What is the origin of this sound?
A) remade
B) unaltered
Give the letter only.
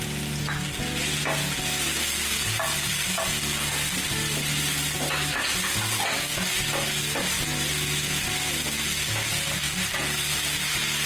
B